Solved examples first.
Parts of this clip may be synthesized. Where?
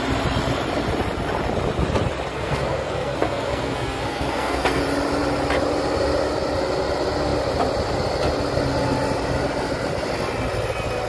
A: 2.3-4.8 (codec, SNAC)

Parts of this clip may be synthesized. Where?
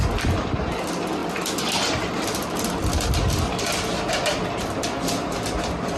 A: none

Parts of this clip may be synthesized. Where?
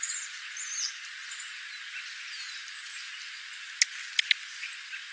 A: none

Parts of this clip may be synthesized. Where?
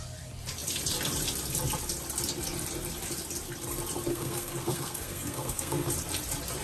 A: 4.1-5.9 (codec, SNAC)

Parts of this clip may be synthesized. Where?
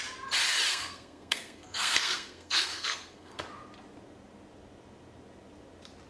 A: 0.7-3.4 (codec, SNAC)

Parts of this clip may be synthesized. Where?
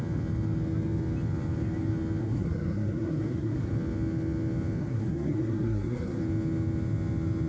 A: 2.2-3.7 (codec, SNAC); 4.8-6.2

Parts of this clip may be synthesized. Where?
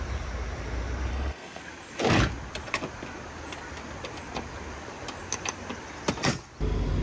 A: 1.1-1.6 (codec, SNAC)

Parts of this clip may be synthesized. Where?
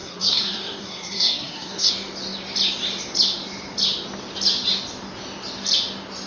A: 0.0-1.9 (codec, SNAC)